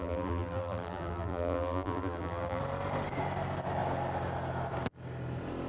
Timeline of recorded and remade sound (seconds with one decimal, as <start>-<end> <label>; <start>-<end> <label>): 0.0-2.6 remade; 2.6-5.7 recorded